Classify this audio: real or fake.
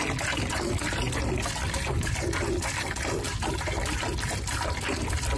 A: real